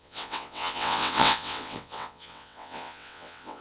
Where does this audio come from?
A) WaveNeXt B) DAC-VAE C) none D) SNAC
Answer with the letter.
A